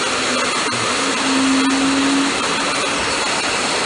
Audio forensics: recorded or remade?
recorded